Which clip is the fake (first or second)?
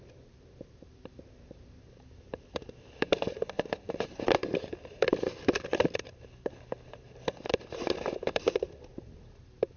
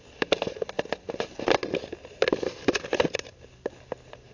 first